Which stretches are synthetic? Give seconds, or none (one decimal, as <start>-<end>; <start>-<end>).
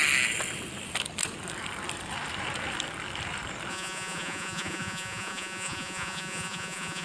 3.7-7.0